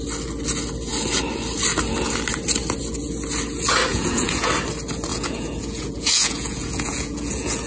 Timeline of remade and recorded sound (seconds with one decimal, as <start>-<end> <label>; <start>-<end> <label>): 0.0-3.9 recorded; 3.9-4.5 remade; 4.5-5.1 recorded; 5.1-7.7 remade